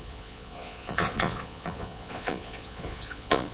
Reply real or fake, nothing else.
fake